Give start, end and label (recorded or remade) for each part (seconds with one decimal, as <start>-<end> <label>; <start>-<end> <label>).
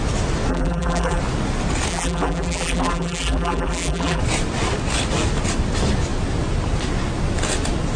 0.0-0.5 recorded; 0.5-1.2 remade; 1.2-1.9 recorded; 1.9-4.2 remade; 4.2-8.0 recorded